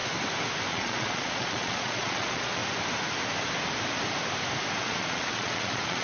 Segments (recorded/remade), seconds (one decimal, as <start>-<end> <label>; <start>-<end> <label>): 0.0-0.7 recorded; 0.7-2.6 remade; 2.6-4.8 recorded; 4.8-6.0 remade